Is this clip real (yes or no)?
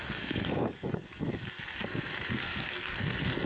no